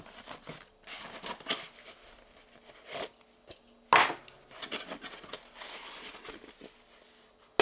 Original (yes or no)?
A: yes